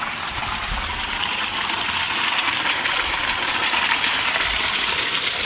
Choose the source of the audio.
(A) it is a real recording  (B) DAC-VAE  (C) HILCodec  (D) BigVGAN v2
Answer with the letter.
D